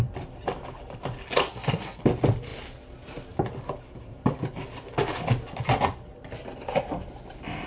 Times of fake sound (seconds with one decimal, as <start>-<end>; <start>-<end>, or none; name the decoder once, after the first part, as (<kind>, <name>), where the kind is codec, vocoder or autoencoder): 1.5-2.0 (codec, SNAC)